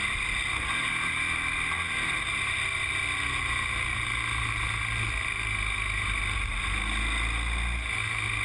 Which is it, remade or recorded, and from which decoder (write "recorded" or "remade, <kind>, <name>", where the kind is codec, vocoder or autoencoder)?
recorded